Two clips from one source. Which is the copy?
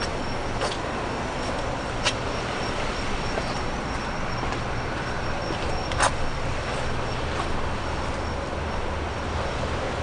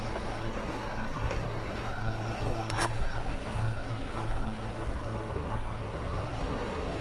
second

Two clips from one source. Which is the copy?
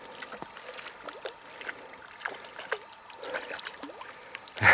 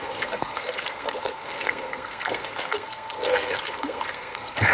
second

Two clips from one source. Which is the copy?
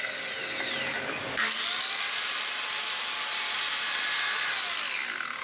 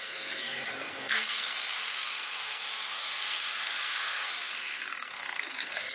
second